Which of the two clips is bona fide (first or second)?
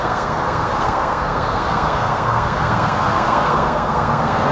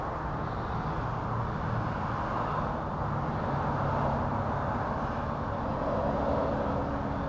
second